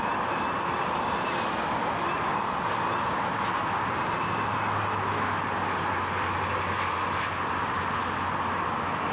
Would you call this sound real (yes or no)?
yes